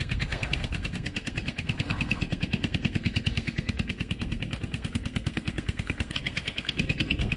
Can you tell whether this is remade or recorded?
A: remade